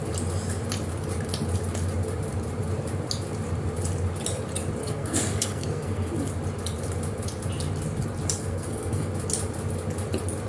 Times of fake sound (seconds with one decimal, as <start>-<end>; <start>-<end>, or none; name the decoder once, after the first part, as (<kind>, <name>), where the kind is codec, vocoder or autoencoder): 4.8-6.1 (codec, SNAC); 8.4-9.1